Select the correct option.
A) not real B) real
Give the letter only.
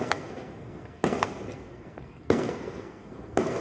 A